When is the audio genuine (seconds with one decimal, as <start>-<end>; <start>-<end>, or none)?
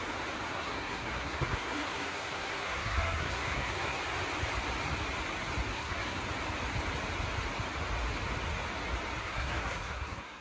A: 0.0-0.5; 4.0-5.7; 6.2-9.2